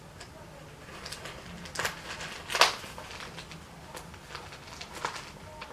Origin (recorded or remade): recorded